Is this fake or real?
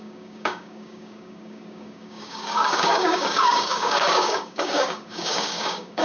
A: fake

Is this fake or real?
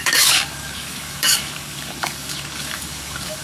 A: fake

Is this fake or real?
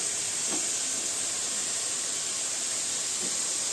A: real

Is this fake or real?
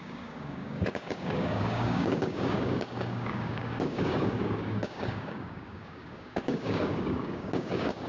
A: fake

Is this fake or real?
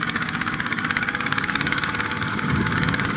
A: fake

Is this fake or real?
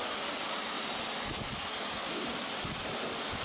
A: real